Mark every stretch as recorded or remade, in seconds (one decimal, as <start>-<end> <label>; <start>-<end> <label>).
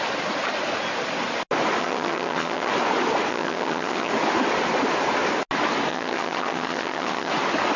0.0-1.8 recorded; 1.8-2.7 remade; 2.7-3.3 recorded; 3.3-4.1 remade; 4.1-5.9 recorded; 5.9-7.3 remade; 7.3-7.8 recorded